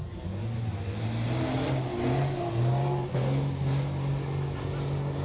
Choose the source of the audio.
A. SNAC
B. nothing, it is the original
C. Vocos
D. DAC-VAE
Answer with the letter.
B